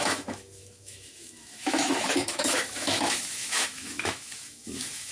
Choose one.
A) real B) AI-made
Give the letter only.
B